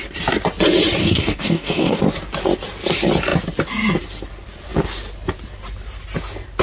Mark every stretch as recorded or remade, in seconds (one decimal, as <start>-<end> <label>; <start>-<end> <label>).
0.0-1.0 recorded; 1.0-2.0 remade; 2.0-6.6 recorded